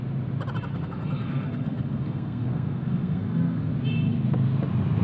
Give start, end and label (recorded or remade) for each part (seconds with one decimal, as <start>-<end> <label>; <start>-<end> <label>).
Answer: 0.0-0.7 recorded; 0.7-3.7 remade; 3.7-5.0 recorded